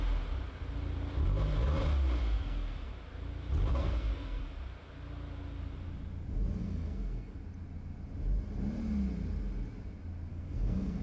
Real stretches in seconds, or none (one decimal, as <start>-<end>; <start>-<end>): 0.0-2.2; 2.9-3.7; 4.4-6.6; 7.4-10.3